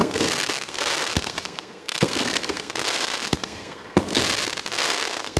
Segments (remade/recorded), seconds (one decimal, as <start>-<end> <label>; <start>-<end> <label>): 0.0-4.2 remade; 4.2-4.8 recorded; 4.8-5.4 remade